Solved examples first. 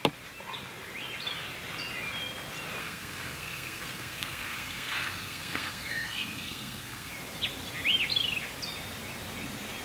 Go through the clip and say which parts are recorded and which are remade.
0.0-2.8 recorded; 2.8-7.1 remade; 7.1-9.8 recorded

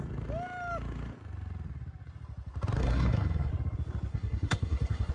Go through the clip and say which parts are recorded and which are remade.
0.0-2.8 recorded; 2.8-3.5 remade; 3.5-4.1 recorded; 4.1-5.1 remade

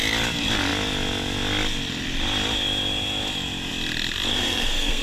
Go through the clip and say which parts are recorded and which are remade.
0.0-4.3 recorded; 4.3-5.0 remade

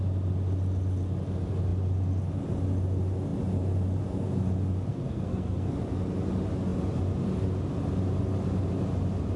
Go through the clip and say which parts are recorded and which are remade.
0.0-4.9 recorded; 4.9-5.7 remade; 5.7-9.4 recorded

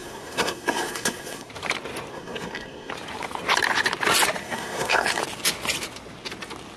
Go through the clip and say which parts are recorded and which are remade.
0.0-1.5 remade; 1.5-2.1 recorded; 2.1-2.9 remade; 2.9-4.4 recorded; 4.4-5.2 remade; 5.2-6.8 recorded

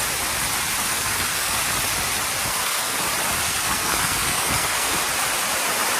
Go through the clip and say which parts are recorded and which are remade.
0.0-0.8 recorded; 0.8-1.6 remade; 1.6-2.4 recorded; 2.4-3.0 remade; 3.0-3.4 recorded; 3.4-5.0 remade; 5.0-6.0 recorded

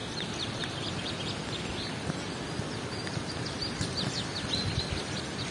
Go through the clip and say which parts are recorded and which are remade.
0.0-5.5 recorded